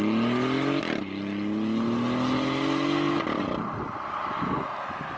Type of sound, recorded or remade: recorded